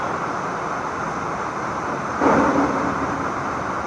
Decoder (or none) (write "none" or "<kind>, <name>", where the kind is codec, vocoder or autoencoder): none